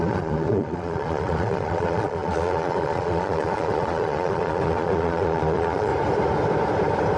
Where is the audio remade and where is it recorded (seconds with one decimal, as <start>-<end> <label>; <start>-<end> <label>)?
0.0-5.9 remade; 5.9-7.2 recorded